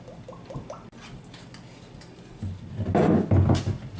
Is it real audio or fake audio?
real